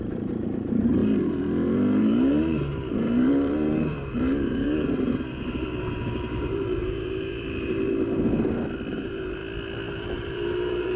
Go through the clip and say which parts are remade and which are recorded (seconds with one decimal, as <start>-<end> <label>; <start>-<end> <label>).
0.0-7.9 remade; 7.9-8.9 recorded; 8.9-9.4 remade; 9.4-9.9 recorded; 9.9-11.0 remade